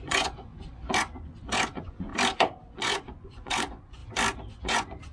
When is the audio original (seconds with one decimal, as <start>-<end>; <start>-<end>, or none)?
2.1-2.7; 4.0-4.5